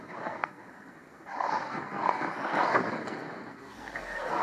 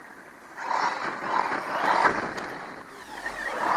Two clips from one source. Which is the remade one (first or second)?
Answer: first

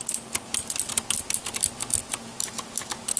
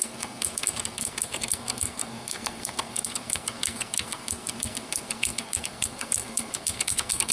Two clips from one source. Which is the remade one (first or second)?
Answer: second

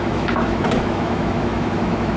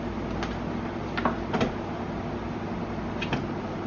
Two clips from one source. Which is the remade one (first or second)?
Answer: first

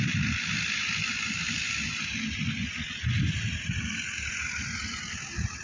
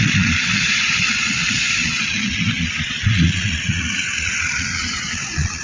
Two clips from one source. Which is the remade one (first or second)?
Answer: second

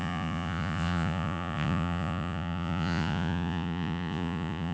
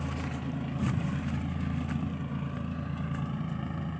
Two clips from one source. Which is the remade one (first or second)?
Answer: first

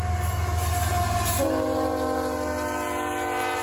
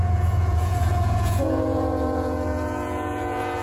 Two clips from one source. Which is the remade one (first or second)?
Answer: second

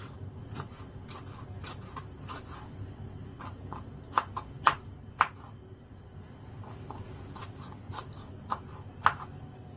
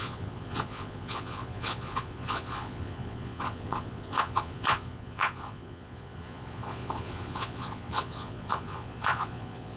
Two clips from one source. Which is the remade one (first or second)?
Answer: second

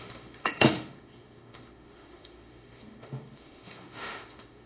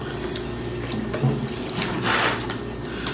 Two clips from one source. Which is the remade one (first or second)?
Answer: first